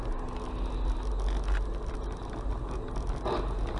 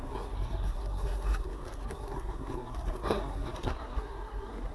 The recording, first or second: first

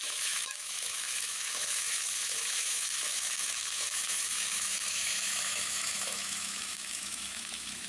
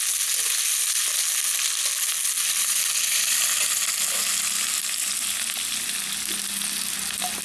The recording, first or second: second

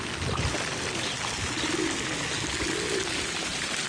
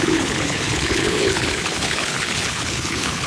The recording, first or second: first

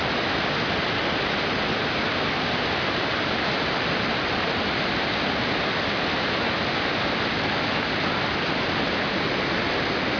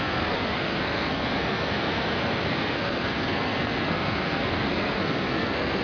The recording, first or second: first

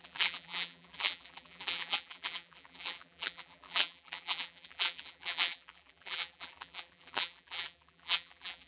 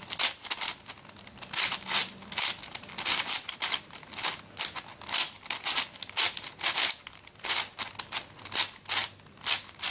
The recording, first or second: second